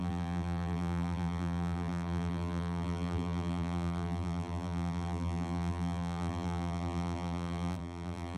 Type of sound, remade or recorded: remade